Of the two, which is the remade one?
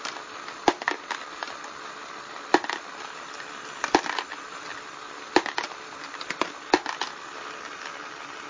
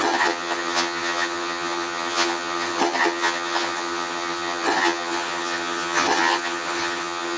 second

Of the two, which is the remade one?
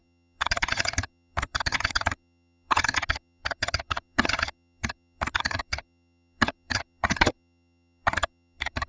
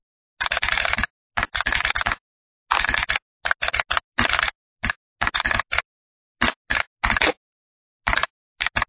first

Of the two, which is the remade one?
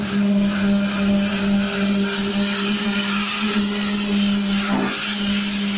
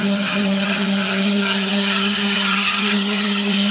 second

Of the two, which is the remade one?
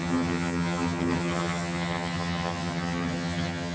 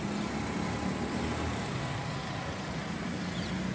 first